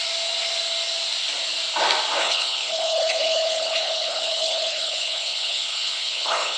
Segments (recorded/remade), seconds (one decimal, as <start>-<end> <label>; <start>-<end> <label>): 0.0-2.2 recorded; 2.2-6.6 remade